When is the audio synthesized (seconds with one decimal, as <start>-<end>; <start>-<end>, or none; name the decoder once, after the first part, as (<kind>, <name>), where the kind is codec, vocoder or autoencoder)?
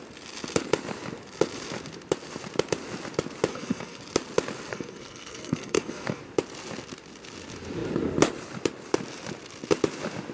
3.5-4.0 (codec, SNAC); 4.7-6.2